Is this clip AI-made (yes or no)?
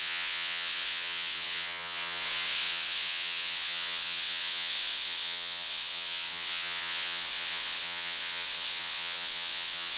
yes